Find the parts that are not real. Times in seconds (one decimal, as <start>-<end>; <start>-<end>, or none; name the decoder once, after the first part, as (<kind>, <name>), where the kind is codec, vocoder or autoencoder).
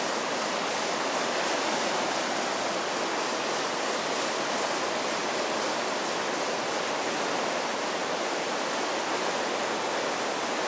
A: 8.0-8.5 (vocoder, BigVGAN v2)